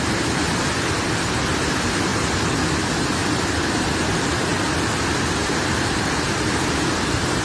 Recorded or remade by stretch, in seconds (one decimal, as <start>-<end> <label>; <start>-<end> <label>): 0.0-0.4 remade; 0.4-1.6 recorded; 1.6-2.1 remade; 2.1-2.8 recorded; 2.8-3.2 remade; 3.2-3.7 recorded; 3.7-4.5 remade; 4.5-5.1 recorded; 5.1-7.4 remade